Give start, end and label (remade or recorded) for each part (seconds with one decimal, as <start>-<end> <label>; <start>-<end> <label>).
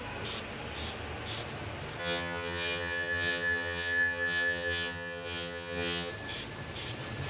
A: 0.0-2.0 recorded; 2.0-6.1 remade; 6.1-7.3 recorded